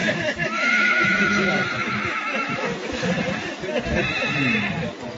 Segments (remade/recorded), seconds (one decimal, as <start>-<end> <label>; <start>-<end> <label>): 0.0-3.1 remade; 3.1-5.2 recorded